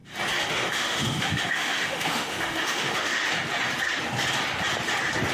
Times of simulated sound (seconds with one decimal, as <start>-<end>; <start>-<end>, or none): 0.5-3.2